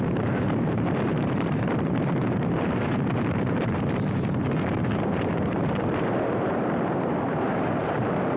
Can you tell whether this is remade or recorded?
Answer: remade